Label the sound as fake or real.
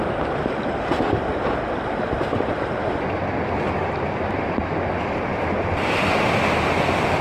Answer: real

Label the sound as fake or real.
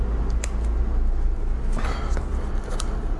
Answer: real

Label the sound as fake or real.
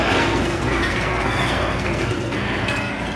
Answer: fake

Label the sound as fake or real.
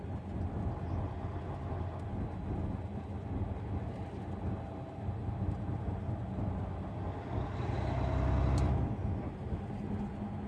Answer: real